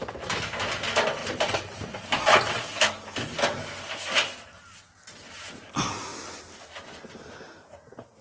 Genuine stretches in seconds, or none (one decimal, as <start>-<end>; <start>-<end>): 0.0-8.2